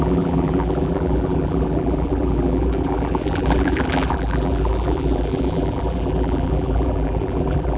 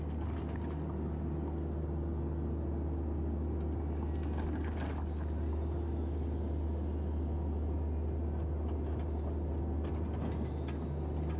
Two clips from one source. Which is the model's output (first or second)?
first